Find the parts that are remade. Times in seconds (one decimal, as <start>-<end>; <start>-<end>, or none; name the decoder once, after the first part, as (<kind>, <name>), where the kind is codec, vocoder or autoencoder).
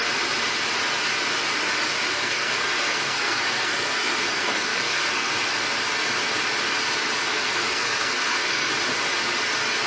2.1-5.3 (codec, SNAC); 7.2-8.7